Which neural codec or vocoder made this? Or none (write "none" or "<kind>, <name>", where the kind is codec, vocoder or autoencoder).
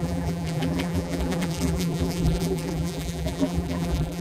vocoder, BigVGAN v2